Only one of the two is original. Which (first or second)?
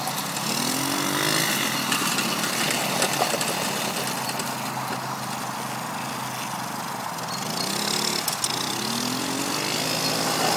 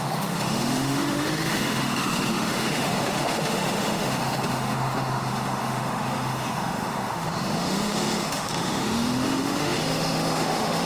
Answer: first